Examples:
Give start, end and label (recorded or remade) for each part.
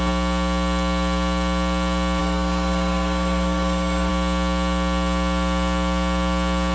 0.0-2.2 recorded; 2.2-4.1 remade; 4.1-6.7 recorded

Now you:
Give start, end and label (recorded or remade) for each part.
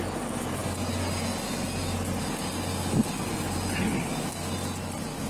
0.0-5.3 recorded